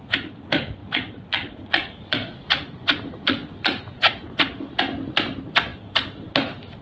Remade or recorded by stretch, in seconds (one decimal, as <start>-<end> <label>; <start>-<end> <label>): 0.0-0.8 recorded; 0.8-4.3 remade; 4.3-6.8 recorded